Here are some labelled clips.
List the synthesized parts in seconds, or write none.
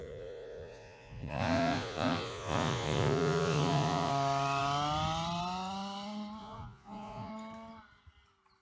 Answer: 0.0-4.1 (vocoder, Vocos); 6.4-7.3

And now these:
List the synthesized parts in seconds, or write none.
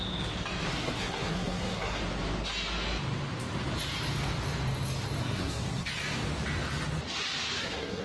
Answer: 0.7-2.0 (codec, SNAC); 5.2-5.9; 7.6-8.0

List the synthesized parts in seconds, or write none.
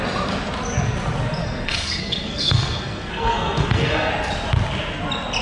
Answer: 1.4-4.1 (codec, SNAC)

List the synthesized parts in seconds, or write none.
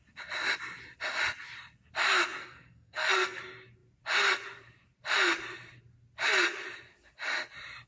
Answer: 2.4-3.4 (codec, SNAC)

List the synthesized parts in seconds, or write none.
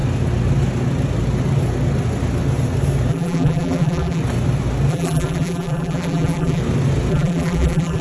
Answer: 3.1-4.2 (vocoder, BigVGAN v2); 4.9-6.6; 7.1-8.0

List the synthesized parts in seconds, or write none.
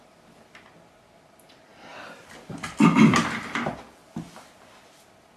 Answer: none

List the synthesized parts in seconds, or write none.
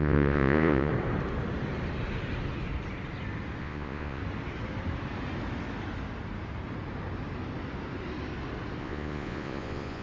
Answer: 0.0-0.9 (vocoder, Vocos); 3.6-4.2; 8.8-10.0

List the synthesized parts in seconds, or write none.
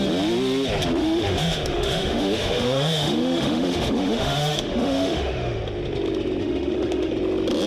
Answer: 1.0-5.6 (autoencoder, DAC-VAE); 6.4-7.1